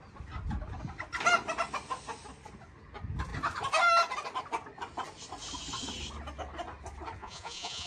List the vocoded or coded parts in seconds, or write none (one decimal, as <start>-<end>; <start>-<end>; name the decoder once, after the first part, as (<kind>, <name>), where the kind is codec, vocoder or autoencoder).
7.2-7.9 (vocoder, Vocos)